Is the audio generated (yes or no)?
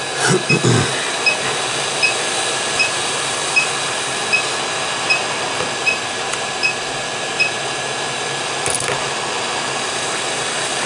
no